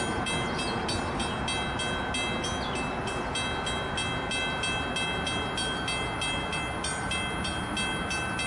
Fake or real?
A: real